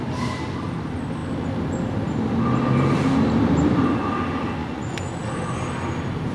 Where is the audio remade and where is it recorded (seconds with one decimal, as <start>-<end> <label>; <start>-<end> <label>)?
0.0-4.6 recorded; 4.6-5.1 remade; 5.1-6.3 recorded